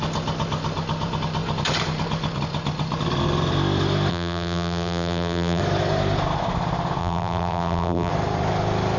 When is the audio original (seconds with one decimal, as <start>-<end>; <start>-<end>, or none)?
0.0-4.1; 5.6-7.0; 8.1-9.0